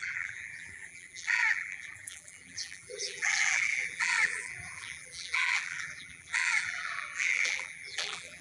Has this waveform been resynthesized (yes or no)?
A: yes